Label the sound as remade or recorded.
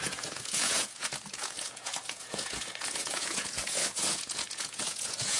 remade